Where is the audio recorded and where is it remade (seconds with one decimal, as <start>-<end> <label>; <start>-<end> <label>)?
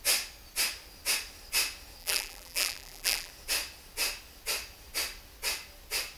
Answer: 0.0-2.0 recorded; 2.0-3.3 remade; 3.3-6.2 recorded